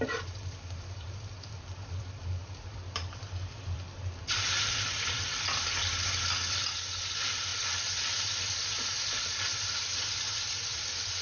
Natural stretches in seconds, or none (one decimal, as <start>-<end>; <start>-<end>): 7.5-9.2